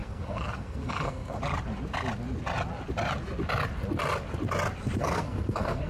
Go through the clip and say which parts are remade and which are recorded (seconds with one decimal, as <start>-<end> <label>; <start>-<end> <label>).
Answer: 0.0-1.4 remade; 1.4-5.0 recorded; 5.0-5.9 remade